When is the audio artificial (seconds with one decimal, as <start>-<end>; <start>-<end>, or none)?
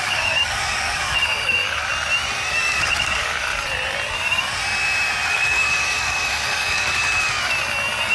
0.0-1.9; 2.5-3.5; 5.3-7.0